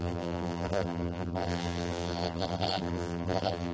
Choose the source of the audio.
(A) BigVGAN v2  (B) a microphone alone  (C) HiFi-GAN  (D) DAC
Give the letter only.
A